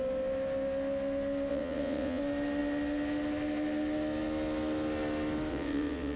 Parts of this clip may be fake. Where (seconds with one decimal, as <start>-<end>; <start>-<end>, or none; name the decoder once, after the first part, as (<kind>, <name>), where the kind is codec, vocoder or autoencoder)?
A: 1.5-2.2 (vocoder, WaveNeXt); 5.5-6.2